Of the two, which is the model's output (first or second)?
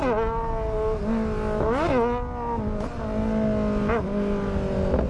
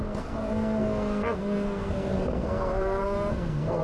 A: second